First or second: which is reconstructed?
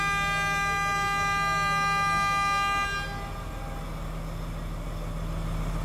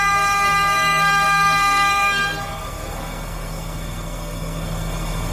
second